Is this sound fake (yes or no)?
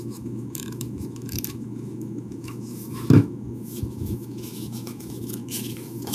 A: yes